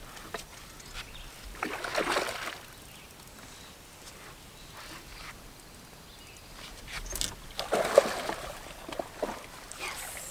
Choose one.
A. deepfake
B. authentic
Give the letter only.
B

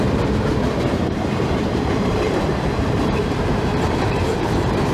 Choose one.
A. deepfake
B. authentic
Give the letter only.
A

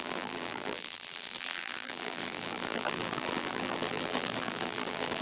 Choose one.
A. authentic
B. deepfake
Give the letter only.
B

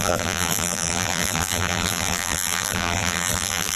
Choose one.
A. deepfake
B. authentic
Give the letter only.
A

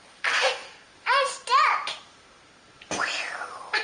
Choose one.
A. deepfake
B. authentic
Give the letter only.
A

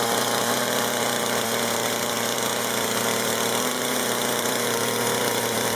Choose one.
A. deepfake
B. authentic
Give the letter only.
A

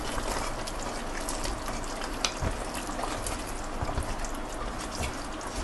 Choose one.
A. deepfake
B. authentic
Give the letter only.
B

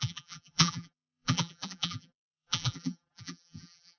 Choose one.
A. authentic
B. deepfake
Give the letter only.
B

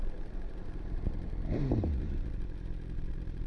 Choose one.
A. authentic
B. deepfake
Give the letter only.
B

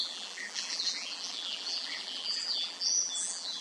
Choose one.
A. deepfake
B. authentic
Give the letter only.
A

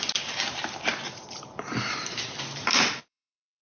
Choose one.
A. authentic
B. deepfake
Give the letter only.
B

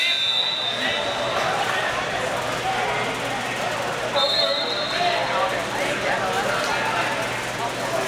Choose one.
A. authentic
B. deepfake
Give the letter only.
A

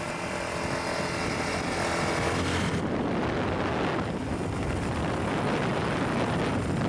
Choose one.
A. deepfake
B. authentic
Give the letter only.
B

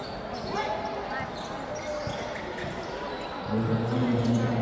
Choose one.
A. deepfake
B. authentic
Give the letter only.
B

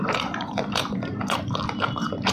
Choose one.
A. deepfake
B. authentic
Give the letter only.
A